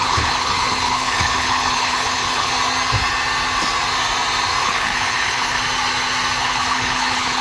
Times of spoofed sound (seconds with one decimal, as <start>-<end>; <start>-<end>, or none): 0.0-2.5; 4.6-5.6; 6.4-7.4